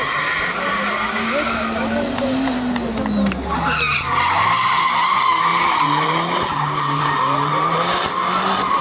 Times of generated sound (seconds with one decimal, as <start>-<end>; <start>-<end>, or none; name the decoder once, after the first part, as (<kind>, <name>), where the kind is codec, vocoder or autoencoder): 5.5-8.1 (vocoder, BigVGAN v2)